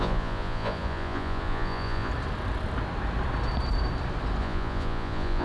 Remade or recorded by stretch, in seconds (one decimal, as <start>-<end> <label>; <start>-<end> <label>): 0.0-2.1 remade; 2.1-4.4 recorded; 4.4-5.4 remade